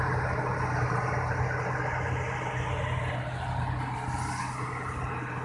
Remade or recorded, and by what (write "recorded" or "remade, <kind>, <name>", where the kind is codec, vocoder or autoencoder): recorded